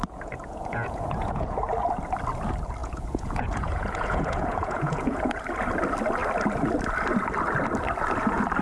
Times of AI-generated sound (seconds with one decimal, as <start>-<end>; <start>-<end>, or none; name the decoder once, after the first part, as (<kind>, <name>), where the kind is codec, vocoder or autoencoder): 0.0-1.7 (vocoder, Vocos); 2.8-5.4